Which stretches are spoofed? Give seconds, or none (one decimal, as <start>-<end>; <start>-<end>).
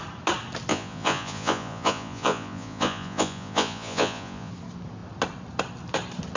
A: 0.7-4.5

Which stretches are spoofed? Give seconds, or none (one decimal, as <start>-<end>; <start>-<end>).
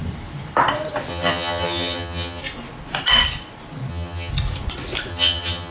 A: 1.1-2.4; 3.9-4.3; 5.1-5.7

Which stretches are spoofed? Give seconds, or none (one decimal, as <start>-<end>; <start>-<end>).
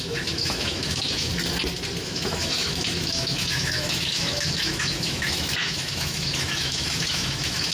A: 0.0-1.3; 2.0-7.7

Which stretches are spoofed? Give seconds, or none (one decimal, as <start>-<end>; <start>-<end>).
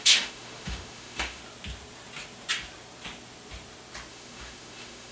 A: 0.0-1.4; 4.1-5.1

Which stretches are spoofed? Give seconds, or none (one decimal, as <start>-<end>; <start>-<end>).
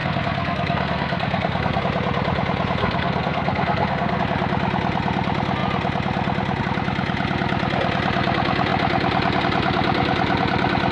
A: 0.0-1.8; 2.8-4.2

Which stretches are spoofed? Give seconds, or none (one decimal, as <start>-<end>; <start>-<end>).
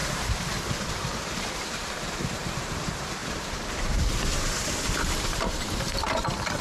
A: 0.0-2.7; 3.2-5.6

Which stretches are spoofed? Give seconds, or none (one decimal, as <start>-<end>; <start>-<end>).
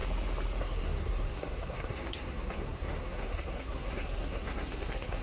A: 0.6-5.2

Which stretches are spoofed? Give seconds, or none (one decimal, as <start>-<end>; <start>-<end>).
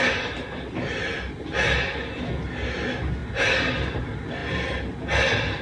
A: none